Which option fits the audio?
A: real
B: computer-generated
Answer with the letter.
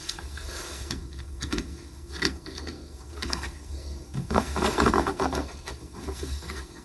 B